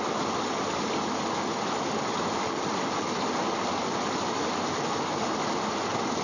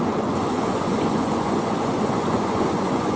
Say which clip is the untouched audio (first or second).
first